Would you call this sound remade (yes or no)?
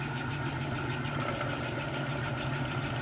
no